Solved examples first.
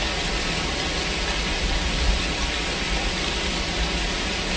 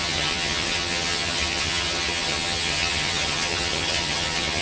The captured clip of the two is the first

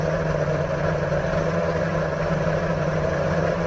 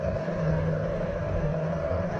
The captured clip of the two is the first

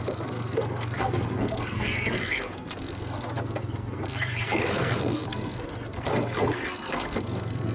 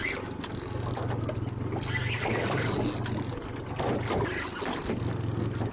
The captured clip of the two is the second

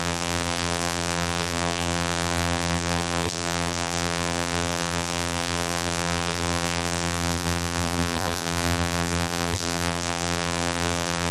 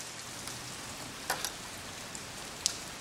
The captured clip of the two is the second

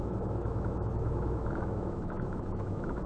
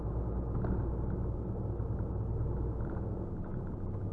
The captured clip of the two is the second